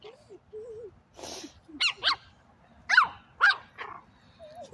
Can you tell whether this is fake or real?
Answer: real